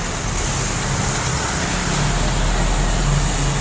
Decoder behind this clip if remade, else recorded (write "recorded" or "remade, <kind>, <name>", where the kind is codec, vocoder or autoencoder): recorded